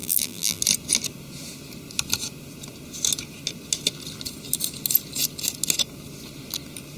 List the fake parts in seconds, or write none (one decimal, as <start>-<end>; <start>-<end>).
0.0-0.6

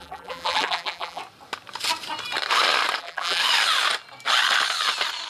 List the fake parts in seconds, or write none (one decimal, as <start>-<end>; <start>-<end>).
0.0-1.2; 3.0-3.4